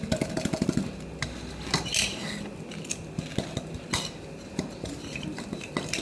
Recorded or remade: recorded